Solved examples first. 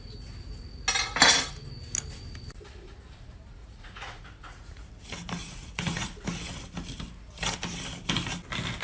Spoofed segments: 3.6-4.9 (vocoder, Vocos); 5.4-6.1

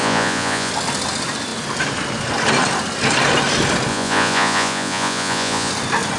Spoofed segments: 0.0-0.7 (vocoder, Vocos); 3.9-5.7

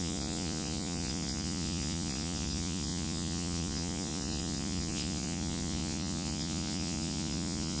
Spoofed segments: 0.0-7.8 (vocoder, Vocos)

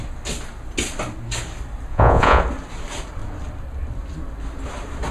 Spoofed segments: 1.9-2.4 (vocoder, Vocos)

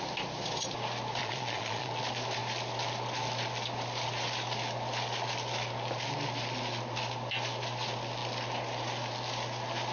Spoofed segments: 1.2-1.9 (vocoder, Vocos)

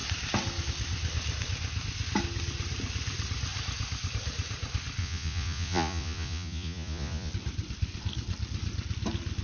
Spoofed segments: 5.0-7.3 (vocoder, Vocos)

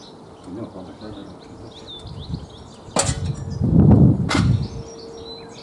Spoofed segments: none